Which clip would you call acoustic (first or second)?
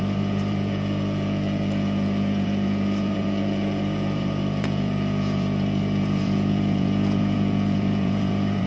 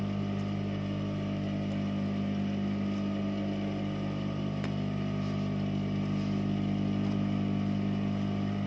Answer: second